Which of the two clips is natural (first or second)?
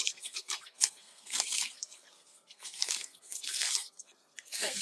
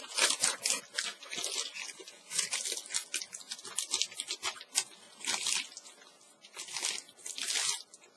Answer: second